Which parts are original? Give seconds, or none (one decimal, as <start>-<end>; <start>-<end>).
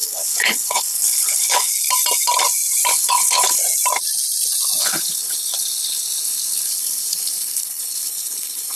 1.7-2.9; 3.6-4.8